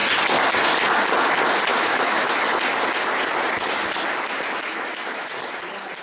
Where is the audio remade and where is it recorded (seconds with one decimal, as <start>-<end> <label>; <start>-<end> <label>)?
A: 0.0-1.7 recorded; 1.7-2.4 remade; 2.4-4.7 recorded; 4.7-5.3 remade; 5.3-6.0 recorded